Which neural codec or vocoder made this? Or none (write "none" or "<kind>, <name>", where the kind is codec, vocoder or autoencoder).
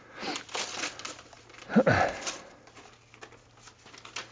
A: none